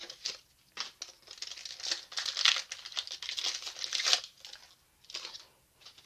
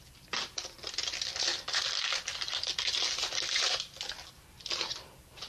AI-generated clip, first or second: second